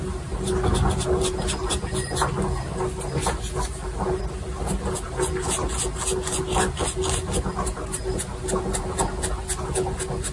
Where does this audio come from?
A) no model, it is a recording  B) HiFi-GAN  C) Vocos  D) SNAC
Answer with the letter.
A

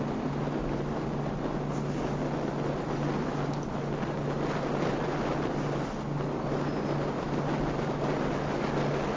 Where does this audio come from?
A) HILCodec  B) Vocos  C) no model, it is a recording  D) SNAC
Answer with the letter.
C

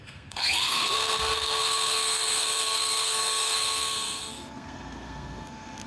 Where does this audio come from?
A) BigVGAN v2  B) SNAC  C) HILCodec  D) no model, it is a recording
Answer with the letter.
B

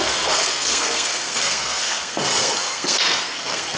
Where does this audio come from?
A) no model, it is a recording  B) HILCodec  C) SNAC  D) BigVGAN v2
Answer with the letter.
C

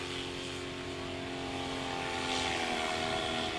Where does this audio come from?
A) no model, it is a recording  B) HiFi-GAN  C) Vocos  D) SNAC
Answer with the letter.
A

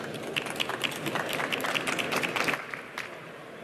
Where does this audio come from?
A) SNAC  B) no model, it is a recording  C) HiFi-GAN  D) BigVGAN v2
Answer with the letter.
B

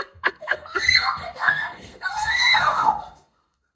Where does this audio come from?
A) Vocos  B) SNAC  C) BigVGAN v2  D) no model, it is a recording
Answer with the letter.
B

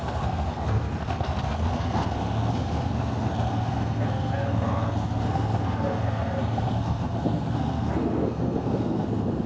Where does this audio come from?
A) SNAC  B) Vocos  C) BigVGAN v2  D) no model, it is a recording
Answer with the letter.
A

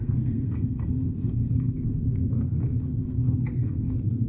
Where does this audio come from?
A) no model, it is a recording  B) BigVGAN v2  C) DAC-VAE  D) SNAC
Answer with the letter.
D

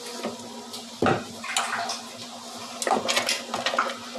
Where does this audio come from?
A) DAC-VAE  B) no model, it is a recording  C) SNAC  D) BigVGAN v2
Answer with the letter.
B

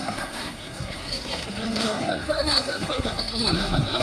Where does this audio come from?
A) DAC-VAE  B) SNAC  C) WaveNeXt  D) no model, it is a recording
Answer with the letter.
B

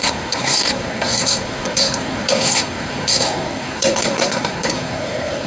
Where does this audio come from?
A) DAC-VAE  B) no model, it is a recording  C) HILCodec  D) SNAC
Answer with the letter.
D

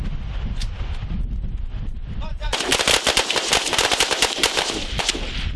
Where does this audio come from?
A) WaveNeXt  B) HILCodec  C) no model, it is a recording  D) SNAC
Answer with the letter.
C